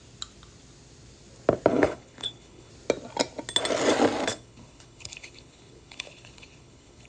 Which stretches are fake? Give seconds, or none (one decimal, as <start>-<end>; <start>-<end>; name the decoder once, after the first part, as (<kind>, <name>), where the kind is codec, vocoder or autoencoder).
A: 1.7-2.7 (codec, HILCodec); 4.3-7.1